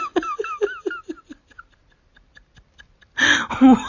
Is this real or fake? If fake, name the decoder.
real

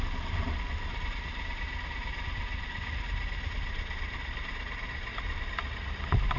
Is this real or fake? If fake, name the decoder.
real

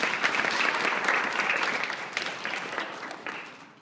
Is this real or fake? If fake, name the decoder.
real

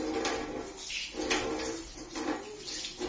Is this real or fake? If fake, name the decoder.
real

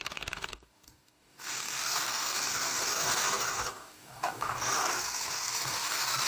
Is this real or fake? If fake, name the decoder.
fake, codec, DAC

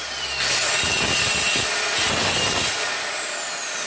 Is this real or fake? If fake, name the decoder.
real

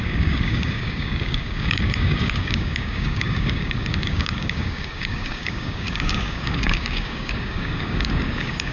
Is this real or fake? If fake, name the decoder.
fake, codec, DAC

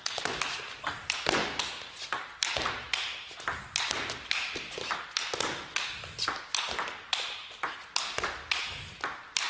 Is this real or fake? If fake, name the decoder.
real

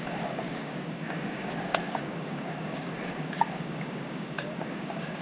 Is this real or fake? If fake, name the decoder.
fake, codec, DAC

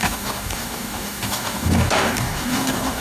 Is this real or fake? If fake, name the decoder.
fake, codec, DAC